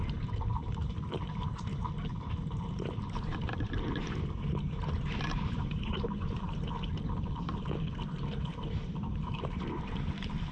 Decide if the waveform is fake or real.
fake